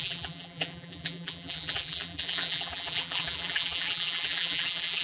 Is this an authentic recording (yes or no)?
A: no